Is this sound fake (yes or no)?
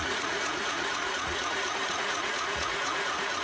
yes